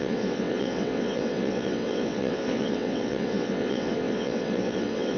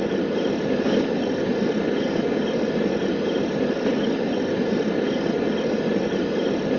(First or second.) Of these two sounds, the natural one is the second